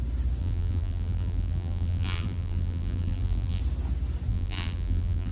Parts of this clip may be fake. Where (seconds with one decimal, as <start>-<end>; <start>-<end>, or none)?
0.4-3.6; 4.3-5.3